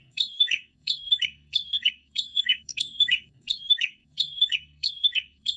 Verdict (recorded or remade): remade